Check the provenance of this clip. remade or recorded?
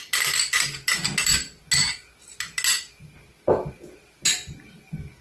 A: recorded